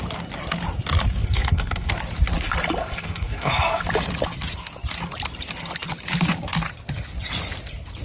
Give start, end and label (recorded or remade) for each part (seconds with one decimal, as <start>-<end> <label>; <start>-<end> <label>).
0.0-1.2 recorded; 1.2-1.9 remade; 1.9-2.8 recorded; 2.8-3.8 remade; 3.8-8.0 recorded